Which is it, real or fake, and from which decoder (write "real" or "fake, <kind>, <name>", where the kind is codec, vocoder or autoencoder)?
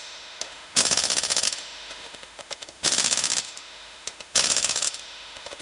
fake, autoencoder, DAC-VAE